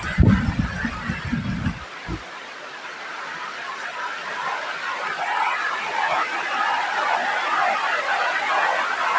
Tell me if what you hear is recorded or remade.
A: recorded